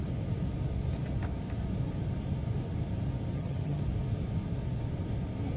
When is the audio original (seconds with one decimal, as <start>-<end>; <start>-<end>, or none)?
0.0-3.3; 3.8-5.6